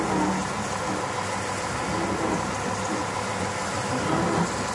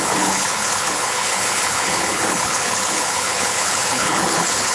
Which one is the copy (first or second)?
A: second